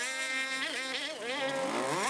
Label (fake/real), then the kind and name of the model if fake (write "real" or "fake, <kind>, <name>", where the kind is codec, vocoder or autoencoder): real